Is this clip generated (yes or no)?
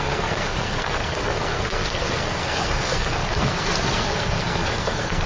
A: yes